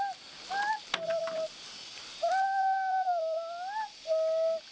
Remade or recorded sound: recorded